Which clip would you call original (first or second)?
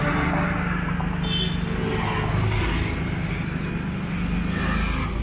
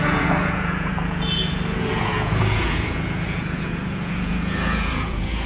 first